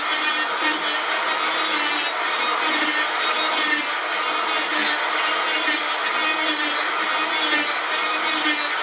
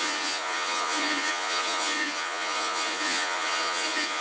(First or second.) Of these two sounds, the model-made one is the second